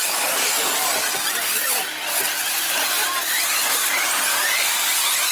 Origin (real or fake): real